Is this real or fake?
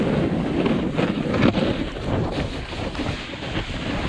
real